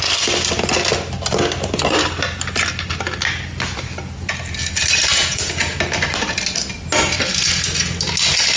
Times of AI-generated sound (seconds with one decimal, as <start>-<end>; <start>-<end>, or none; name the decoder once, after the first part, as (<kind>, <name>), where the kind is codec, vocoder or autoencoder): 5.2-5.8 (vocoder, Vocos)